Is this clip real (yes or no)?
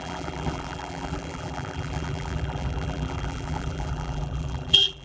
no